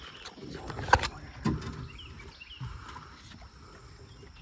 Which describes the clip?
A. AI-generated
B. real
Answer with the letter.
B